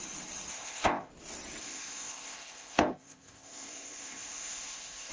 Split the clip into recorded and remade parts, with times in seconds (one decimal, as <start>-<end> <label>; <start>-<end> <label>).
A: 0.0-0.5 recorded; 0.5-1.1 remade; 1.1-1.6 recorded; 1.6-5.1 remade